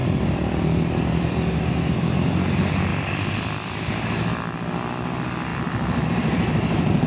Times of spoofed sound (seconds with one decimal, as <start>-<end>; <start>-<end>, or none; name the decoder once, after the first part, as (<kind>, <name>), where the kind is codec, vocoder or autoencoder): 0.0-2.3 (vocoder, BigVGAN v2); 2.9-3.9; 5.5-7.1